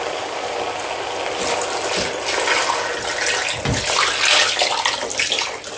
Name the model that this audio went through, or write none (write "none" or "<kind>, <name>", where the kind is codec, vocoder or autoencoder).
none